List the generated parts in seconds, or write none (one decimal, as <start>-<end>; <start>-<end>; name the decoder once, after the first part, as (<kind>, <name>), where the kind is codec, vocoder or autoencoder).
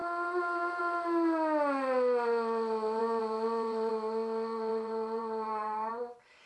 3.0-3.9 (vocoder, BigVGAN v2); 4.7-5.9